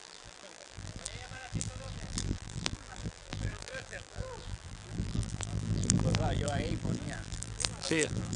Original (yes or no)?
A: no